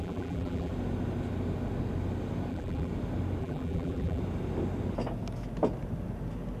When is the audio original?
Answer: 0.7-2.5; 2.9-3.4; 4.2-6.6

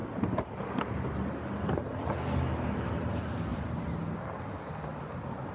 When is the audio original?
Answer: 0.0-5.5